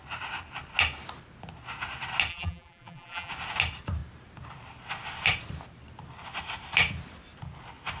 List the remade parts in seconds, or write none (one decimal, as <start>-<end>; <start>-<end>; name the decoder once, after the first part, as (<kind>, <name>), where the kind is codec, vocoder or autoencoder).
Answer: 2.3-3.3 (vocoder, BigVGAN v2)